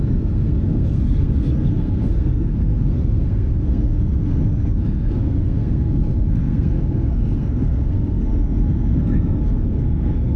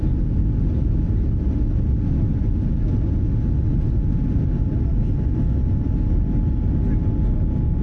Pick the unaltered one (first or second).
second